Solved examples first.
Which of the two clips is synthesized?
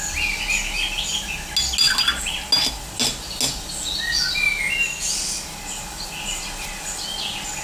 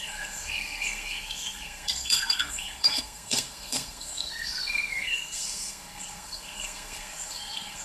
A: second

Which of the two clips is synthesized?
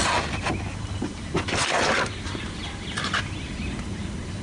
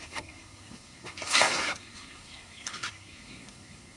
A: second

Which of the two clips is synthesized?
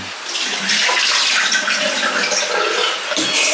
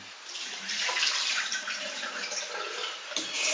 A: second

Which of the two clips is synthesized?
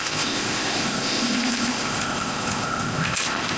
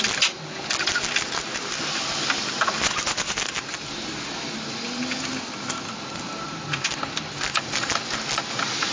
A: first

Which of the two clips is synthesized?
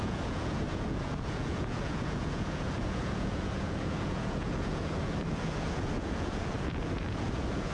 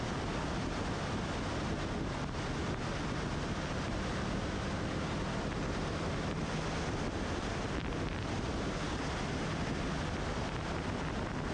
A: first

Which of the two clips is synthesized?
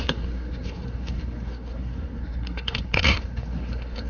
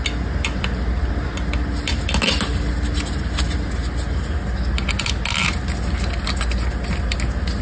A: first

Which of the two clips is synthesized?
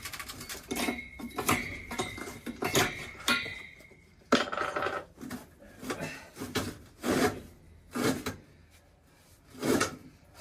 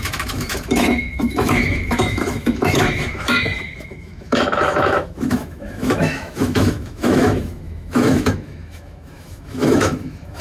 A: second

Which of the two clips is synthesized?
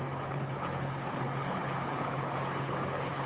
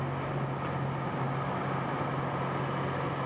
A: first